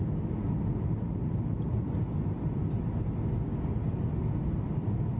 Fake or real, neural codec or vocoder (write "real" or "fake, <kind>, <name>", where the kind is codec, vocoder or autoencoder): real